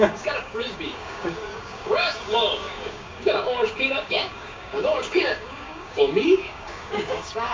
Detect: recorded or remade remade